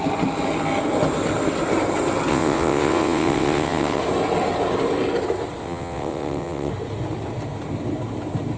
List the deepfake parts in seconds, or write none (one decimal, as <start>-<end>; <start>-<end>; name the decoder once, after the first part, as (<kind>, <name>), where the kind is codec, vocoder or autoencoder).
2.3-4.0 (vocoder, WaveNeXt); 5.6-6.7